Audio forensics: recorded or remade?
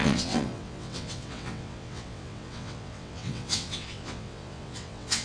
remade